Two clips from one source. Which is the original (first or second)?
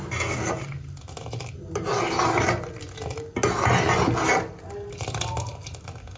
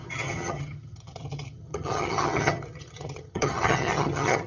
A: first